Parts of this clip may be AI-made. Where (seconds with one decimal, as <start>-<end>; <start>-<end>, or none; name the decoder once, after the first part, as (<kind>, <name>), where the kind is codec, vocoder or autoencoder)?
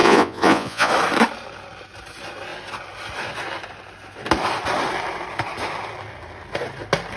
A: 0.0-0.9 (vocoder, Vocos)